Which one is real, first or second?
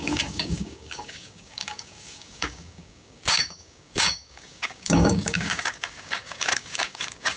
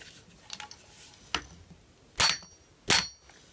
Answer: second